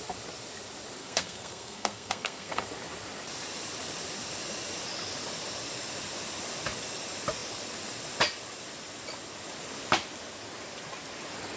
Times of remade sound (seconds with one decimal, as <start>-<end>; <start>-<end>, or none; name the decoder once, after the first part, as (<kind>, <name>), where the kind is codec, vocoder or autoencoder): 1.0-2.6 (codec, SNAC)